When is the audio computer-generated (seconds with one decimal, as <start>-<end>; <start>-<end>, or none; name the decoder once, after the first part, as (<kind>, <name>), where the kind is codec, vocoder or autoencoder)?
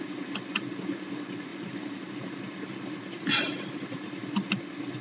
none